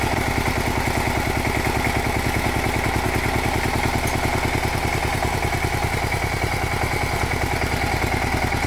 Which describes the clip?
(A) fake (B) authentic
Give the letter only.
B